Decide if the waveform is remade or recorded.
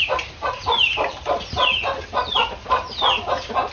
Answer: recorded